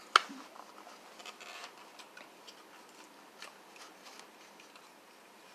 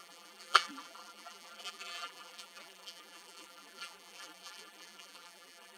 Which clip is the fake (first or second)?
second